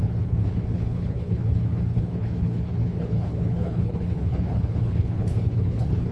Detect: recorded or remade remade